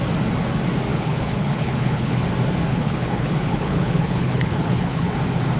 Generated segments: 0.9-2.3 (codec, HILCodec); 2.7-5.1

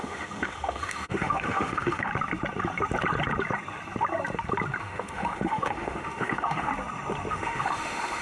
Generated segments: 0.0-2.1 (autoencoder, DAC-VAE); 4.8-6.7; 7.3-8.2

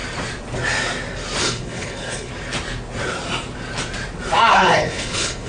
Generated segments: 1.4-2.3 (codec, HILCodec); 4.5-5.5

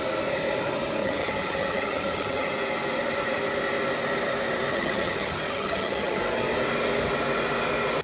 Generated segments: 1.0-2.5 (vocoder, HiFi-GAN); 4.7-6.2

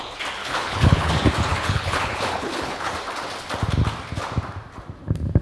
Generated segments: 0.4-1.1 (codec, HILCodec); 1.5-2.9

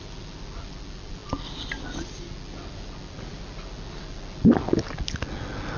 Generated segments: none

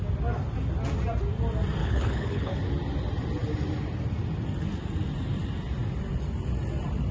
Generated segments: 1.8-2.6 (codec, HILCodec)

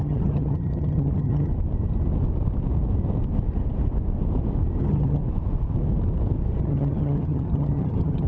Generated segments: 0.0-1.5 (vocoder, HiFi-GAN); 4.8-5.2; 6.6-8.3